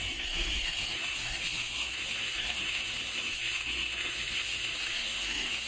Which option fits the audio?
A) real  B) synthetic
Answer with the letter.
B